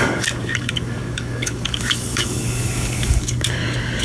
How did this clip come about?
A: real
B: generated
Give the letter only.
B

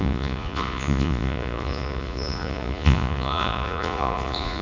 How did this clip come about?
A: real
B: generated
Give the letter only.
B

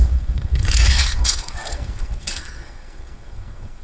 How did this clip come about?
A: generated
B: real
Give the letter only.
A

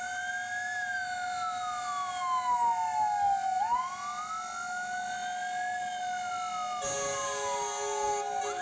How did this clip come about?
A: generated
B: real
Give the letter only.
B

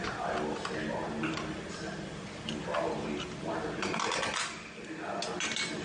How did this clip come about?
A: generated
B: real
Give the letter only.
B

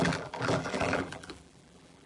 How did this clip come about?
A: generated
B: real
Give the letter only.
A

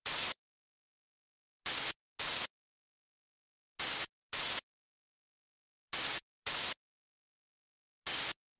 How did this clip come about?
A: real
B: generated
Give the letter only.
A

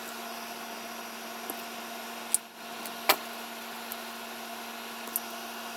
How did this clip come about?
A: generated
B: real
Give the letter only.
B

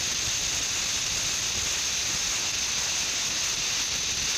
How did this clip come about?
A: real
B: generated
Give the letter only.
A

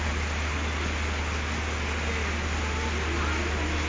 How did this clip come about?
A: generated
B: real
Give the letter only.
B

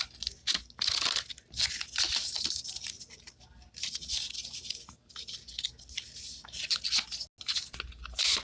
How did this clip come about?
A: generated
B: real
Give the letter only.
B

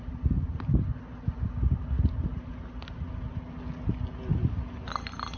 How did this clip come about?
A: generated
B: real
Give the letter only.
B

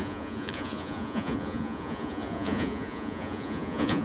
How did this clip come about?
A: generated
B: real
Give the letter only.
A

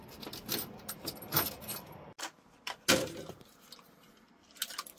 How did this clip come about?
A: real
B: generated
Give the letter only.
A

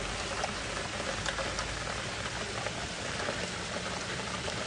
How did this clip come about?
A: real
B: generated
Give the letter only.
A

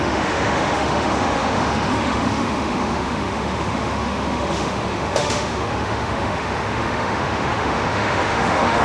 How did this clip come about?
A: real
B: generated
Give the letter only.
B